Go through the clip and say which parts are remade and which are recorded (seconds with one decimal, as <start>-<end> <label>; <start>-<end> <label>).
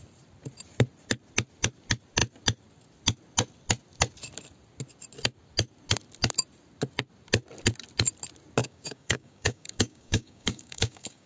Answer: 0.0-8.6 recorded; 8.6-11.3 remade